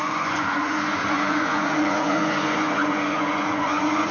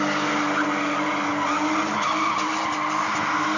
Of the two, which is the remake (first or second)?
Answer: first